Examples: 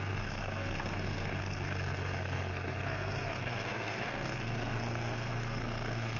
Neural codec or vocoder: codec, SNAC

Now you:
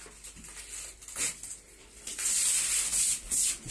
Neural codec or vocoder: none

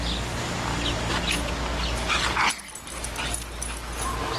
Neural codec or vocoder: none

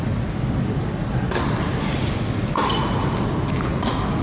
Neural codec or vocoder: none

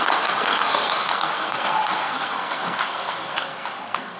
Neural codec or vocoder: codec, SNAC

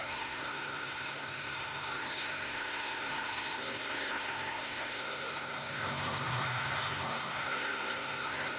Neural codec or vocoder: codec, SNAC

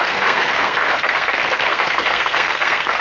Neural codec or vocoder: codec, SNAC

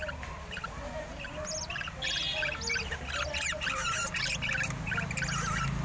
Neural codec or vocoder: none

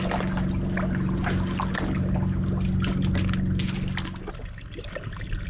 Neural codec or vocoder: none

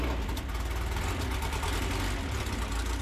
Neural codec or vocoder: none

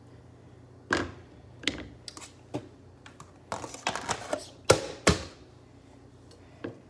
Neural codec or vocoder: none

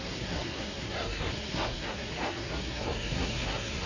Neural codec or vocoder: codec, SNAC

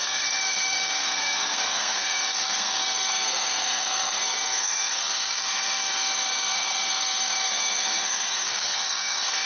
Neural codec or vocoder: codec, SNAC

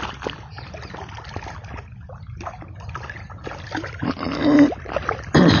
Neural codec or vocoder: none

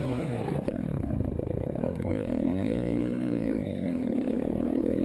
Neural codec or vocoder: codec, SNAC